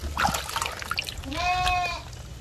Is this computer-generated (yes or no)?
no